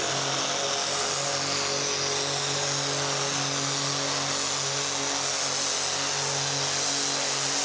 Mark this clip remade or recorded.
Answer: recorded